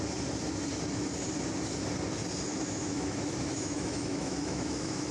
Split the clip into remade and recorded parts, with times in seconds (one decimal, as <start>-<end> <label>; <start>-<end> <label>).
0.0-2.5 recorded; 2.5-5.1 remade